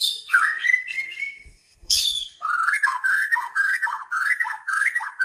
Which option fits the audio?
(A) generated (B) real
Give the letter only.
A